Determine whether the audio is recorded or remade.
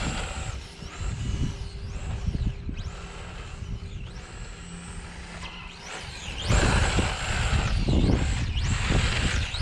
recorded